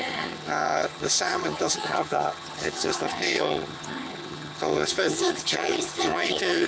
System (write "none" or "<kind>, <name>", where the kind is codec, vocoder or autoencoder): vocoder, HiFi-GAN